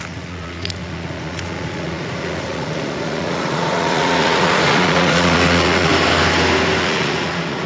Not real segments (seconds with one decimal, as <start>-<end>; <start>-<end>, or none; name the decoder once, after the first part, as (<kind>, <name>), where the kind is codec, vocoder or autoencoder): 0.0-5.9 (vocoder, Vocos); 6.8-7.7